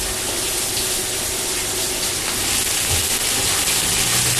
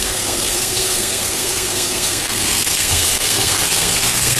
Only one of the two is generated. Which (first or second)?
second